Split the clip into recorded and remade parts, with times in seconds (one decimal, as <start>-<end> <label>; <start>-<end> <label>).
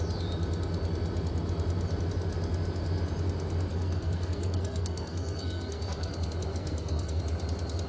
0.0-3.7 recorded; 3.7-6.1 remade; 6.1-6.5 recorded; 6.5-7.2 remade; 7.2-7.9 recorded